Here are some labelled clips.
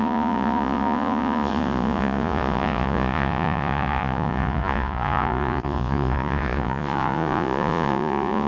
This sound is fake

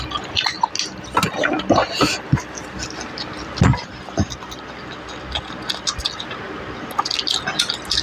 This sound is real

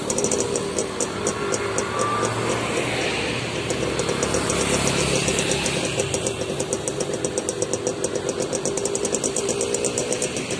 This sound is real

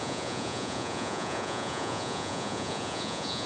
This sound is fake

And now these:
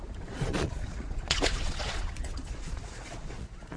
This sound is fake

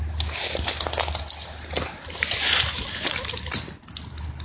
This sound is real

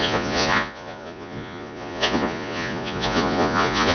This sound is fake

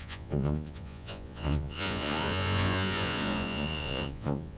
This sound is fake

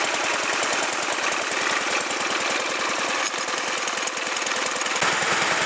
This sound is real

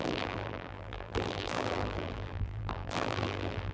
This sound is fake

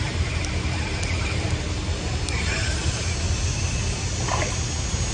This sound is real